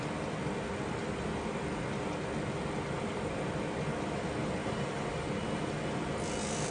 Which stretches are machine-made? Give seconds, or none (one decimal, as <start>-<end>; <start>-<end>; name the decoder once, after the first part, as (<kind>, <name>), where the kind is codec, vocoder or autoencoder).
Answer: 4.6-5.1 (vocoder, BigVGAN v2)